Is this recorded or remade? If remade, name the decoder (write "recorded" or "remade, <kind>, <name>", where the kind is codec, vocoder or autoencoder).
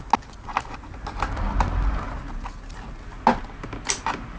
recorded